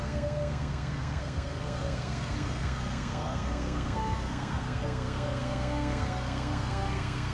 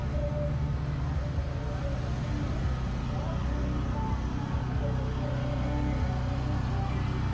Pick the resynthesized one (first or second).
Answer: first